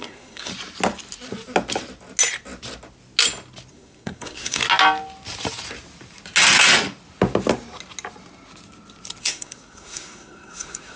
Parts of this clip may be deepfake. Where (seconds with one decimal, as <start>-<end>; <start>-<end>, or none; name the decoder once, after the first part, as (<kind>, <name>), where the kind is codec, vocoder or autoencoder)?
0.0-0.5 (codec, SNAC); 3.7-4.6; 9.2-11.0

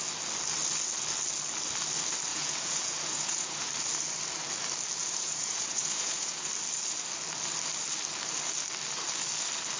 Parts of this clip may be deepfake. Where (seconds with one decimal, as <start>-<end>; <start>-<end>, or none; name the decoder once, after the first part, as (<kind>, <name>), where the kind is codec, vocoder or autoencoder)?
2.3-3.7 (vocoder, Vocos); 5.0-6.5

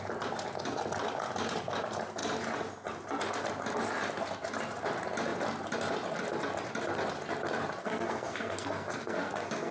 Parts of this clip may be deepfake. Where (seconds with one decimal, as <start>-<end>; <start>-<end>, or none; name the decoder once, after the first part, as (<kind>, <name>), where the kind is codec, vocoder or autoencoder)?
7.8-9.7 (codec, SNAC)

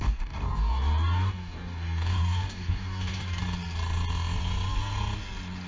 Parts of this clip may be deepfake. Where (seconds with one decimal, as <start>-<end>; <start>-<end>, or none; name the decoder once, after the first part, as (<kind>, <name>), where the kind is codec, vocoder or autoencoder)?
0.0-3.4 (codec, DAC)